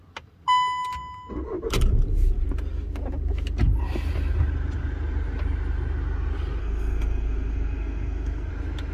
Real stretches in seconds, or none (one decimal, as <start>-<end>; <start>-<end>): 0.0-6.6; 8.5-8.9